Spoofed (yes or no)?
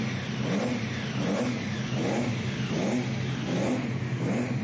no